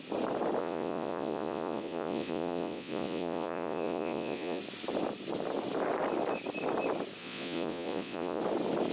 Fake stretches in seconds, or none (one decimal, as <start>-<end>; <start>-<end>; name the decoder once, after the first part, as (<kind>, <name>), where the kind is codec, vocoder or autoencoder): 0.6-4.6 (vocoder, Vocos); 7.2-8.4